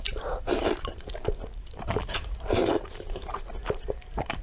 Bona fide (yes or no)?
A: no